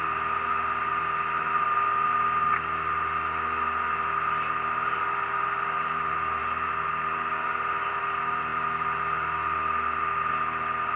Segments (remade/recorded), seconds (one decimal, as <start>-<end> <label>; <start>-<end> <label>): 0.0-11.0 recorded